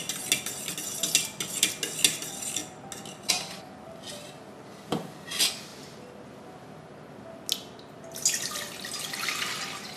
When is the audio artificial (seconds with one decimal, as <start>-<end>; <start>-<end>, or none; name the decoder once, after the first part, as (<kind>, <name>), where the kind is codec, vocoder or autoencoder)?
none